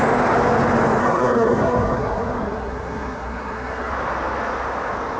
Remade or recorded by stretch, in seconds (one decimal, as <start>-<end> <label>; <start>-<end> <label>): 0.0-1.0 recorded; 1.0-3.9 remade; 3.9-5.2 recorded

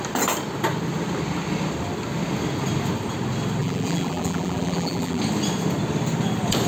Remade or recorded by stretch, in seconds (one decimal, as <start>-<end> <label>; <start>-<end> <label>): 0.0-3.6 recorded; 3.6-5.2 remade; 5.2-6.7 recorded

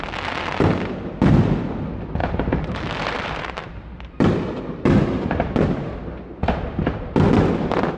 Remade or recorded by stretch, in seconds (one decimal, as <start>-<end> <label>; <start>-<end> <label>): 0.0-2.2 recorded; 2.2-6.1 remade; 6.1-8.0 recorded

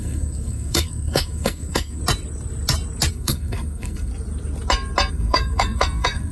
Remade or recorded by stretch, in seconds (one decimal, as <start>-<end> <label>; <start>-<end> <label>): 0.0-2.0 remade; 2.0-3.1 recorded; 3.1-4.1 remade; 4.1-5.1 recorded; 5.1-6.3 remade

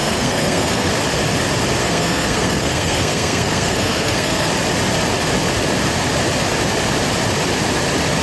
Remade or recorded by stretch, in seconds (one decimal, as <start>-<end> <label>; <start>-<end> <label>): 0.0-0.9 remade; 0.9-1.8 recorded; 1.8-4.5 remade; 4.5-8.2 recorded

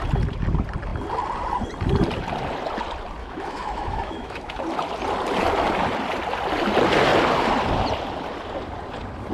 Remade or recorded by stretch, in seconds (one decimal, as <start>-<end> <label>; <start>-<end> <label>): 0.0-3.2 recorded; 3.2-4.6 remade; 4.6-9.3 recorded